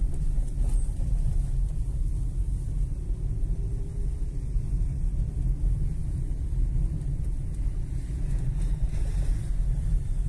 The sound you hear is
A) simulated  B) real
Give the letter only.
B